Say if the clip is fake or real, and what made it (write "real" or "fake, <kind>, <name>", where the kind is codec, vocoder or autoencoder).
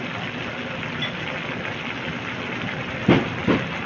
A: real